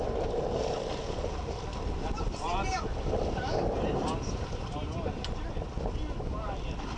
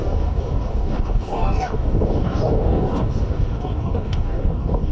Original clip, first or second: first